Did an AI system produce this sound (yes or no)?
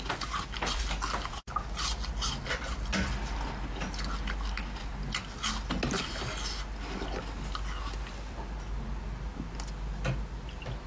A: no